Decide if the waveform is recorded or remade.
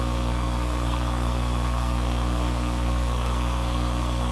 remade